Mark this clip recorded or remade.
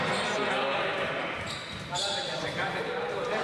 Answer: recorded